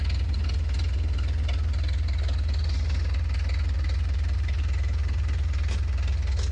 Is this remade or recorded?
recorded